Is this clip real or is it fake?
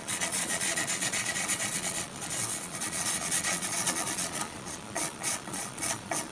fake